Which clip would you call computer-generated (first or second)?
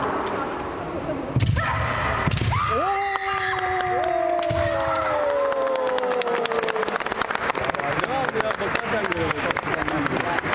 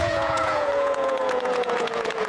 second